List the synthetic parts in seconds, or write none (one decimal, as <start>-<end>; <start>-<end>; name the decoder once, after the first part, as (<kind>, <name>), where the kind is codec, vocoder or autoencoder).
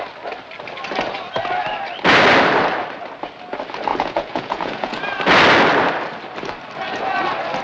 3.9-5.0 (vocoder, Vocos)